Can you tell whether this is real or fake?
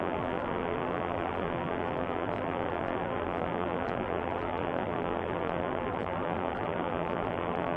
fake